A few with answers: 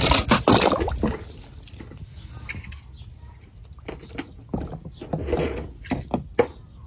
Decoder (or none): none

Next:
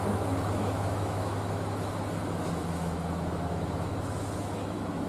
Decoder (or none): autoencoder, DAC-VAE